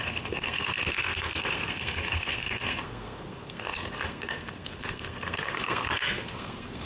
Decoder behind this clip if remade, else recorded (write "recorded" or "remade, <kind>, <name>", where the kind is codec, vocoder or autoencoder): remade, codec, SNAC